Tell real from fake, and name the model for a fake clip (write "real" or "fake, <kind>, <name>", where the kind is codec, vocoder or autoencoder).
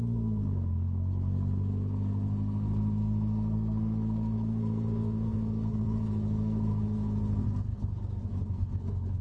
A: fake, codec, SNAC